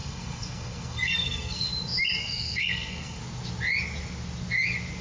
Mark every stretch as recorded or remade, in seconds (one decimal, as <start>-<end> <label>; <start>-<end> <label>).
0.0-1.7 remade; 1.7-2.2 recorded; 2.2-3.2 remade; 3.2-5.0 recorded